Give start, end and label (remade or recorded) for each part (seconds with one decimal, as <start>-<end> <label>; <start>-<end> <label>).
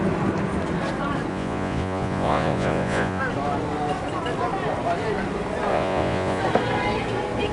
0.0-1.3 recorded; 1.3-3.2 remade; 3.2-5.7 recorded; 5.7-6.4 remade; 6.4-7.5 recorded